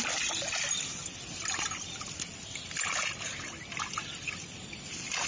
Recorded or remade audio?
recorded